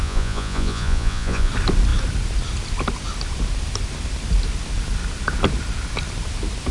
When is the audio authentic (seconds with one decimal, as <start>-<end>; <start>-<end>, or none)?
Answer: 1.5-6.7